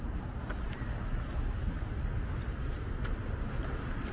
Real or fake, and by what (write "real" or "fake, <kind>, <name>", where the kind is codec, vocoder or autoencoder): real